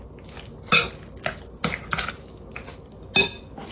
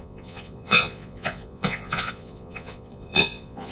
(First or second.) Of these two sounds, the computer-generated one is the second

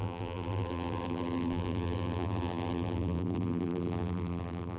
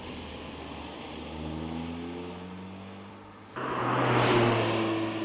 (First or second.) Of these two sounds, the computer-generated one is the first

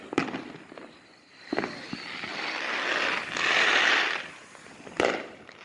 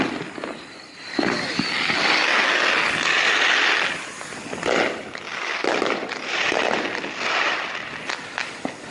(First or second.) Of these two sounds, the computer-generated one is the first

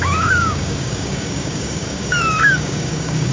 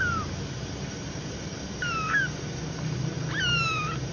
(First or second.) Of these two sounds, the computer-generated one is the first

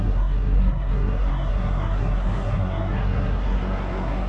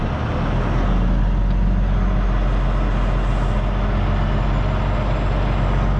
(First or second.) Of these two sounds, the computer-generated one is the first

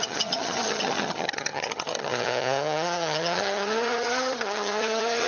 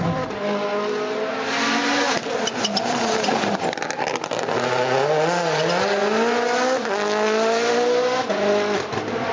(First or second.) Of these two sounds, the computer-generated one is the first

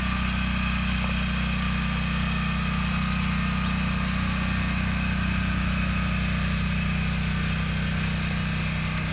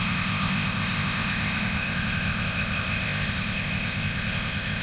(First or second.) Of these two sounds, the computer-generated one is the second